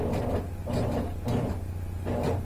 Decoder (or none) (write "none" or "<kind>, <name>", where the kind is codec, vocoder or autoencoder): none